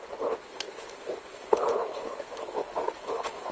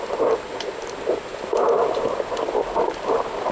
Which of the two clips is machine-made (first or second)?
first